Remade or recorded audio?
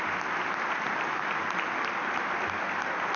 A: recorded